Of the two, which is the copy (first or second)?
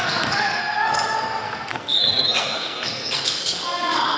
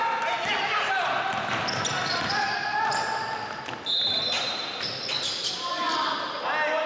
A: first